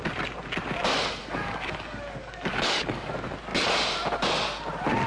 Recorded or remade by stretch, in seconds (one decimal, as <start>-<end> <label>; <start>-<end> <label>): 0.0-1.2 recorded; 1.2-3.1 remade; 3.1-5.1 recorded